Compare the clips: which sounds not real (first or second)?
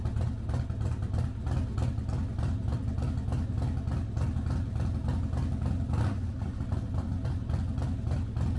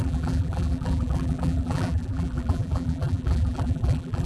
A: second